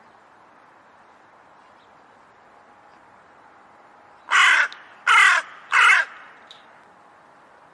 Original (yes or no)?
yes